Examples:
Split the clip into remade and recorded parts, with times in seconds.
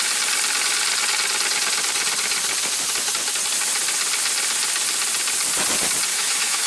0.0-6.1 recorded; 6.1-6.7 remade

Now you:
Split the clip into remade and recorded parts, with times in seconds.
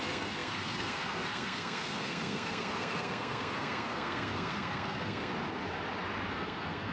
0.0-5.3 remade; 5.3-6.3 recorded; 6.3-6.9 remade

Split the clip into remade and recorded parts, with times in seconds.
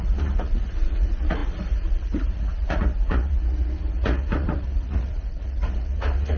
0.0-6.4 remade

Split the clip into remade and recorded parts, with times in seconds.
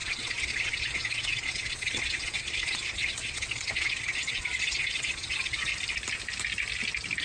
0.0-5.7 remade; 5.7-7.2 recorded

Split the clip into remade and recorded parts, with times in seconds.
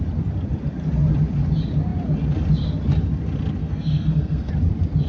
0.0-3.6 recorded; 3.6-4.5 remade; 4.5-5.1 recorded